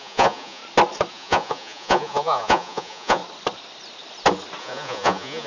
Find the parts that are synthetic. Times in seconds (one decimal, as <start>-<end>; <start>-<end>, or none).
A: 0.0-0.6; 1.1-3.2; 4.6-5.5